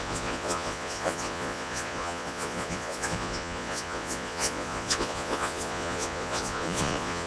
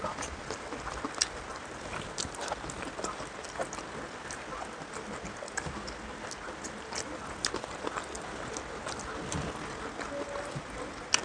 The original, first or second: second